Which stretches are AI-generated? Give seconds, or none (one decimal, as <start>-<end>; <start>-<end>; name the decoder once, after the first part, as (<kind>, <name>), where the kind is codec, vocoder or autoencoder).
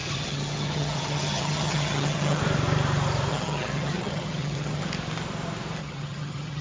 0.0-2.4 (vocoder, HiFi-GAN); 3.3-4.8; 5.8-6.6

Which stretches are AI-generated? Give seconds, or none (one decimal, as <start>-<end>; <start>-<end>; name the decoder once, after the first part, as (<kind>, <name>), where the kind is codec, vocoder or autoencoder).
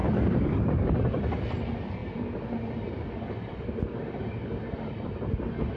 none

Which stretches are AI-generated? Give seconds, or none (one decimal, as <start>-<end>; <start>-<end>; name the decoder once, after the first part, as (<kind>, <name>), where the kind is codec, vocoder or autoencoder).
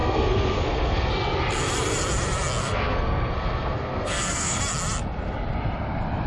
0.0-1.1 (codec, SNAC); 2.6-4.6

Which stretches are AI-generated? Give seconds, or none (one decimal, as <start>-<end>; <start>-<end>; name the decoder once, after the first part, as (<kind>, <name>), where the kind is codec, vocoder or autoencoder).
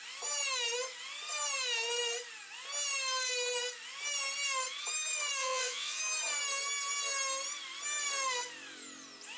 5.4-6.0 (vocoder, WaveNeXt)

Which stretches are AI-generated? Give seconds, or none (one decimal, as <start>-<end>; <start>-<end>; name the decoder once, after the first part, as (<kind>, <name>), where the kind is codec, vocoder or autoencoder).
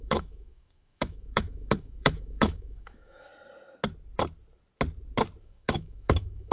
0.0-3.3 (autoencoder, DAC-VAE); 5.4-6.5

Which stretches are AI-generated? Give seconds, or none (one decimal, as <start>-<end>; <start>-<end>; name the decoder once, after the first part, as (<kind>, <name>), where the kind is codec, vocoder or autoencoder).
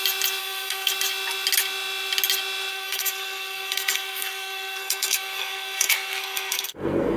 0.4-0.9 (codec, SNAC); 2.7-7.2